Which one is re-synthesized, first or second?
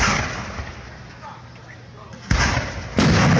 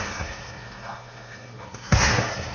second